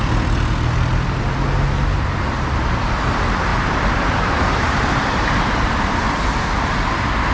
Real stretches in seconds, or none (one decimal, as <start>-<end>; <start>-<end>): 0.0-3.5; 5.7-7.3